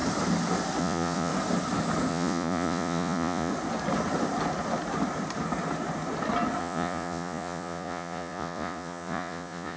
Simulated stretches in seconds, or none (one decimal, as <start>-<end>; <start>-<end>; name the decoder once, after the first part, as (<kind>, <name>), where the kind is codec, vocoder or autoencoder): 0.8-1.3 (vocoder, Vocos); 2.1-3.5; 6.6-9.8